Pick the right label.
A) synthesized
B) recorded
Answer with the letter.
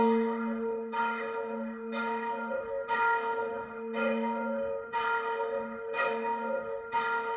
A